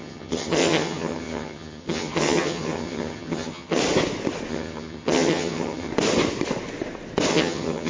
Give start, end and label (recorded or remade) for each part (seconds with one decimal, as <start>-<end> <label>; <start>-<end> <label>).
0.0-3.8 remade; 3.8-4.5 recorded; 4.5-5.9 remade; 5.9-7.3 recorded; 7.3-7.9 remade